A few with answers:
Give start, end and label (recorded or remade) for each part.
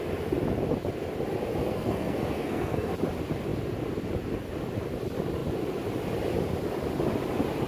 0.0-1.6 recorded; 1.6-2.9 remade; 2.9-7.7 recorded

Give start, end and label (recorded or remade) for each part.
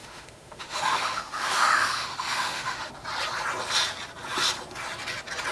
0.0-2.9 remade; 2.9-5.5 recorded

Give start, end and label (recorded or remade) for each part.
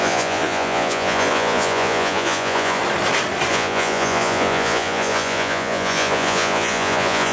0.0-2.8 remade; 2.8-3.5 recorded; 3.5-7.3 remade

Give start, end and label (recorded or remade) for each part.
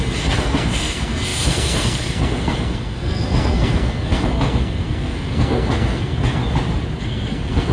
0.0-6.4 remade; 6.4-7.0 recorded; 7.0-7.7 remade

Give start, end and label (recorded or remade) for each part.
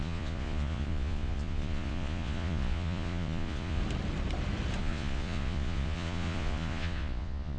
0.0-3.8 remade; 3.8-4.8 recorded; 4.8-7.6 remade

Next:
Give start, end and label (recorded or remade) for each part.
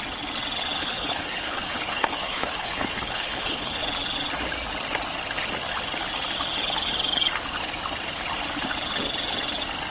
0.0-0.8 recorded; 0.8-3.8 remade; 3.8-9.9 recorded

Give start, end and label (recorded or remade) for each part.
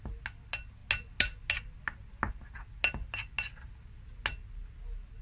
0.0-5.2 recorded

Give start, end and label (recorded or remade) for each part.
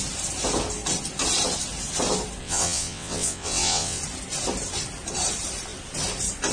0.0-2.4 recorded; 2.4-4.0 remade; 4.0-6.5 recorded